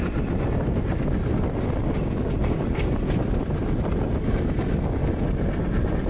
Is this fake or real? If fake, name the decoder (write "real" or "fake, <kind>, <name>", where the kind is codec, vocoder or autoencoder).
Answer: real